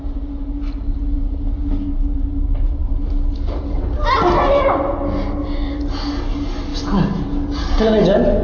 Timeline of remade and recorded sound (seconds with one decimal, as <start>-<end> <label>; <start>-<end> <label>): 0.0-8.4 recorded